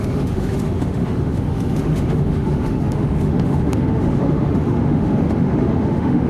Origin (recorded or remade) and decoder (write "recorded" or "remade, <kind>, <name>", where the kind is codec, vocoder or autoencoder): remade, autoencoder, DAC-VAE